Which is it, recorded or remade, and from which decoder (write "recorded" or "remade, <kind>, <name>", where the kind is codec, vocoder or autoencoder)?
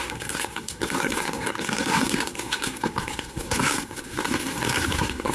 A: remade, codec, SNAC